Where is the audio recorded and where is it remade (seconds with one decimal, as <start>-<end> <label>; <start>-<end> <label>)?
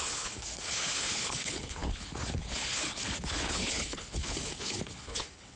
0.0-5.6 remade